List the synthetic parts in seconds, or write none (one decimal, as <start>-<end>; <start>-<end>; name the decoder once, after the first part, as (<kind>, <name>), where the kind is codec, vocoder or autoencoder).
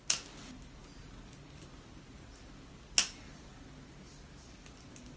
none